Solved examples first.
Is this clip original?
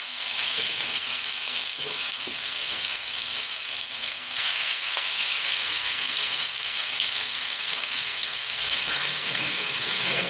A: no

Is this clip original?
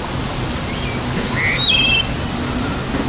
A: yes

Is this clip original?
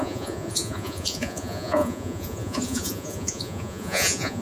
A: no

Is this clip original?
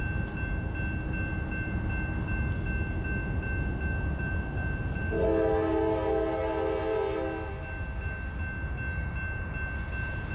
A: yes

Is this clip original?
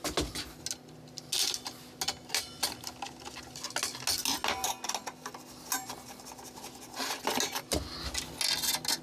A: yes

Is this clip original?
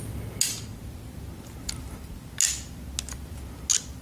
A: yes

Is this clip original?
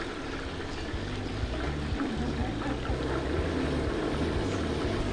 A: yes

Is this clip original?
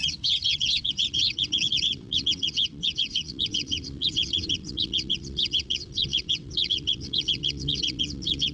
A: no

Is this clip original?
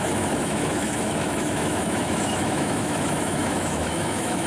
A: no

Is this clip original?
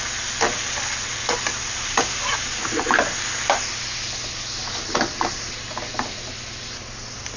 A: yes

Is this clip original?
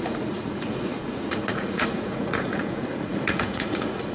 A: no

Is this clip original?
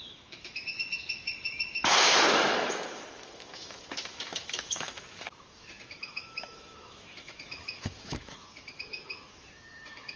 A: no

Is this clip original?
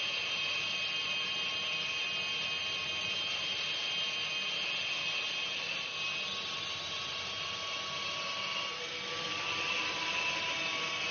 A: yes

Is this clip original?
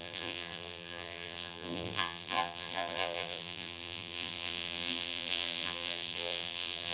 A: no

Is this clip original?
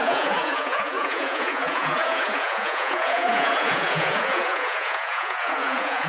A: no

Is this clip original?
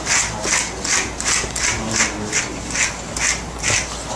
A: yes